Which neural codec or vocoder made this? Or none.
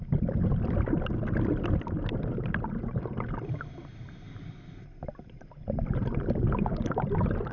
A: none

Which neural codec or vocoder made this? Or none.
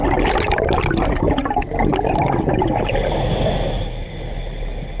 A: none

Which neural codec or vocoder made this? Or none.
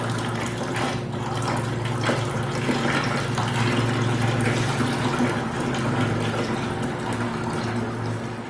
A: none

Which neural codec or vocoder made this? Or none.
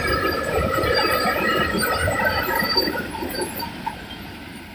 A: vocoder, BigVGAN v2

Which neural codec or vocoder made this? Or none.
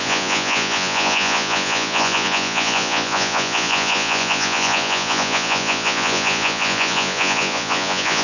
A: vocoder, Vocos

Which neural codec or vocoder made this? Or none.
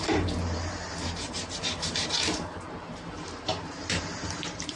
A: vocoder, BigVGAN v2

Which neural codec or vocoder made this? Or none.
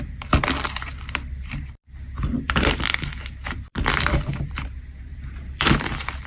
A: vocoder, BigVGAN v2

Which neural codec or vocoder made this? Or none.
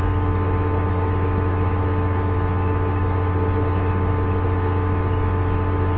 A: none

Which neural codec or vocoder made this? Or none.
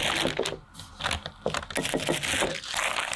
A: none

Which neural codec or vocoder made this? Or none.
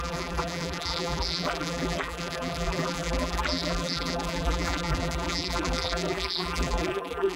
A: vocoder, BigVGAN v2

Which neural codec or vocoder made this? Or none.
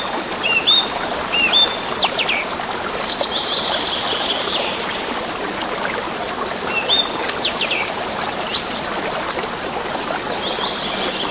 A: none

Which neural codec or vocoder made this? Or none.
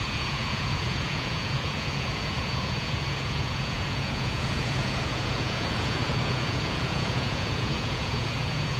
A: vocoder, Vocos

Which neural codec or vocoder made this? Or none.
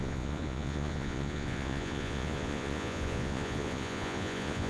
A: vocoder, Vocos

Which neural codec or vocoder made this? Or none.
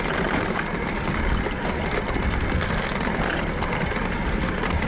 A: none